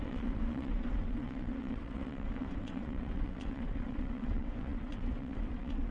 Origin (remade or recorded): remade